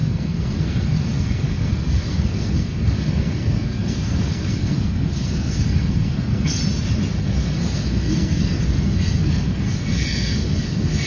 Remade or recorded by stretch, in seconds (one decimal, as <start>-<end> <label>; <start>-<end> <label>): 0.0-6.6 remade; 6.6-7.2 recorded; 7.2-11.1 remade